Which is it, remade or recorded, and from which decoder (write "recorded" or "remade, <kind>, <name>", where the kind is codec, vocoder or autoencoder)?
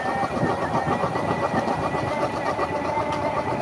recorded